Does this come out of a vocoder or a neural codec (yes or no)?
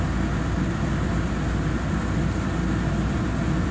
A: no